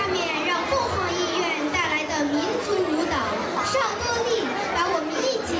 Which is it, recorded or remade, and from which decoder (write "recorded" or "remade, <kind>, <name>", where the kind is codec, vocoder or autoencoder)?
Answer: recorded